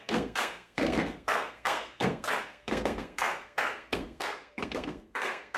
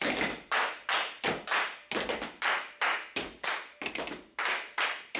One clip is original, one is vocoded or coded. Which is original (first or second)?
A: second